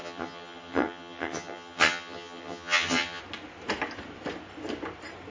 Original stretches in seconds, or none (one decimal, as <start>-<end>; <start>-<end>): 3.2-5.3